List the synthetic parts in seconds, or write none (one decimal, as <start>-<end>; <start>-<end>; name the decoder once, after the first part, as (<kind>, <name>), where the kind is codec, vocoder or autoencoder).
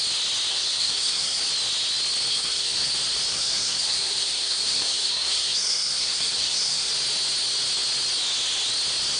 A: 0.5-1.4 (codec, SNAC); 2.3-2.9; 3.3-6.9